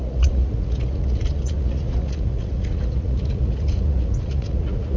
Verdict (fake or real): fake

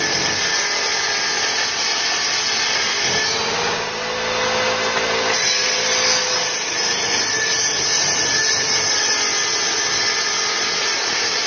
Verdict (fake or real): real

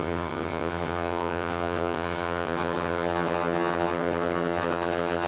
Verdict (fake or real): fake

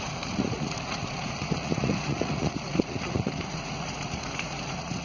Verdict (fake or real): fake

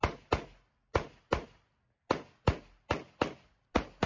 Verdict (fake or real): real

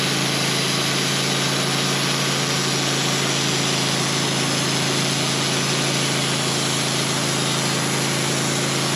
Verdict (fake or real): real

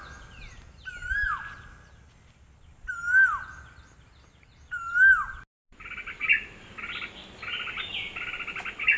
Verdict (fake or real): real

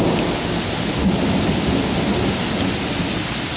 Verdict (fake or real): real